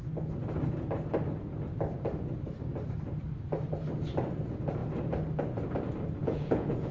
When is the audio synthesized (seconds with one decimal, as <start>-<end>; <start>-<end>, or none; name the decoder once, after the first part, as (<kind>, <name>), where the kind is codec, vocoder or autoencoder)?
6.2-6.9 (vocoder, Vocos)